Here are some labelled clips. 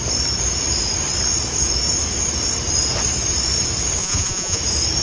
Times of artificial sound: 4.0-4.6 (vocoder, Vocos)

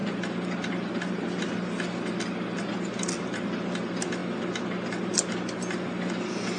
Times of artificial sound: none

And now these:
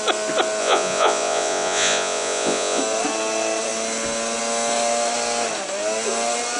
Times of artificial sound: 0.6-2.8 (vocoder, Vocos)